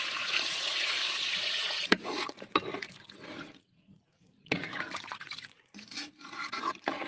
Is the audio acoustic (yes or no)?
no